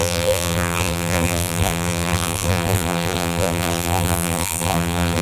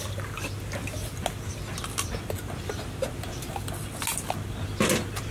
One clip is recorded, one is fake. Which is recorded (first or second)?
second